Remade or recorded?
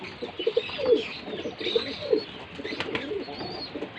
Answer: recorded